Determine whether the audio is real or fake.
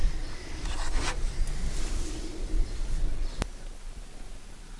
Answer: real